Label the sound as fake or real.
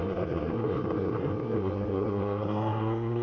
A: fake